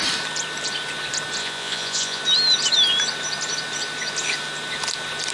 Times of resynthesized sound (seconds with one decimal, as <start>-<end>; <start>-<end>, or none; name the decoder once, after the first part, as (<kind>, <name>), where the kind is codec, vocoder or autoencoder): 1.4-2.2 (vocoder, Vocos)